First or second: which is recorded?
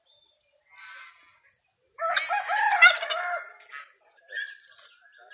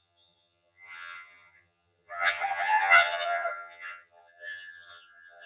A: first